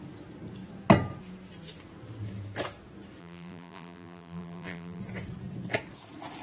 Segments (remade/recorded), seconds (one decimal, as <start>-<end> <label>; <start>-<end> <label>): 0.0-3.2 recorded; 3.2-5.0 remade; 5.0-6.4 recorded